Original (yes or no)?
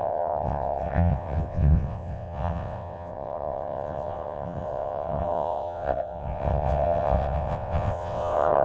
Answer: no